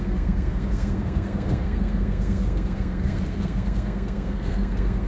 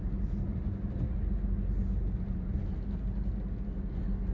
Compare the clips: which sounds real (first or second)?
second